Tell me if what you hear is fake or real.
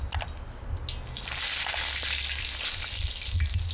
real